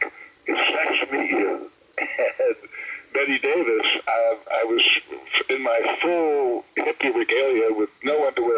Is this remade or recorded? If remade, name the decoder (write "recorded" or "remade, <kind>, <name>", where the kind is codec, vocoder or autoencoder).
recorded